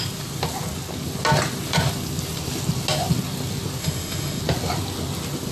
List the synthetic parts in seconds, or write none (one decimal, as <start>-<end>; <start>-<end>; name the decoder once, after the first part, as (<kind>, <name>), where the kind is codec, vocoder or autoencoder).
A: 3.8-4.4 (autoencoder, DAC-VAE)